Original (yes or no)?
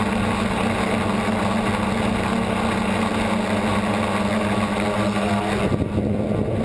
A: yes